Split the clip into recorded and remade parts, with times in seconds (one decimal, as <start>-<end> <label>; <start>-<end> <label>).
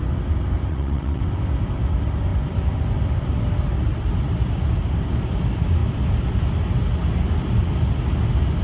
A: 0.0-0.7 recorded; 0.7-1.2 remade; 1.2-8.6 recorded